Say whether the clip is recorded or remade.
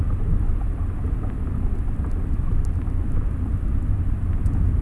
recorded